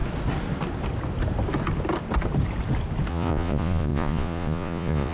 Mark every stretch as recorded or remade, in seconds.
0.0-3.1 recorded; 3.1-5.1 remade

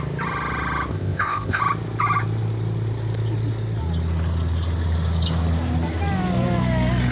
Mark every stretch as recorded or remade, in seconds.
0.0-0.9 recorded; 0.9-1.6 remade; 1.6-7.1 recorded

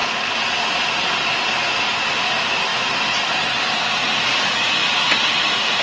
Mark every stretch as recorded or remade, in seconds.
0.0-5.8 recorded